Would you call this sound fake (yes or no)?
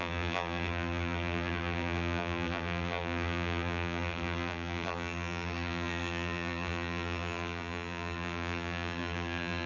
yes